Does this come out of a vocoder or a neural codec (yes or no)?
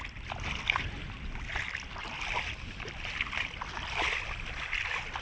no